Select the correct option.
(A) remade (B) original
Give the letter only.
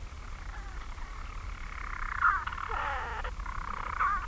A